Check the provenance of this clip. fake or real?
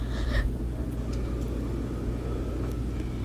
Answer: real